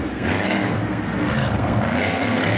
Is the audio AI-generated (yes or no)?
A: yes